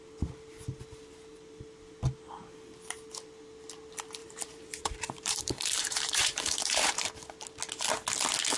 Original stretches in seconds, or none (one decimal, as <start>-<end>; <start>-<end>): 0.0-4.2; 7.1-8.6